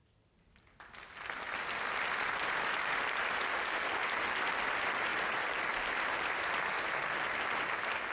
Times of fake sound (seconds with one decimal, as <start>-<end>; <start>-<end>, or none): 0.0-3.9; 5.1-5.7